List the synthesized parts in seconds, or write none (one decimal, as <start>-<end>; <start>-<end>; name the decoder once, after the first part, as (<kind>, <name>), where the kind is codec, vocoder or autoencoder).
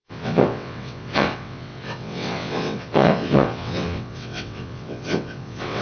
0.0-5.8 (vocoder, WaveNeXt)